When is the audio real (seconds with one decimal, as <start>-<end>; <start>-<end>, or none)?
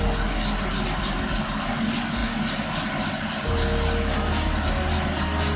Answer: 0.0-5.6